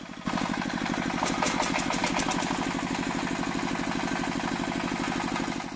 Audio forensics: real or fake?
real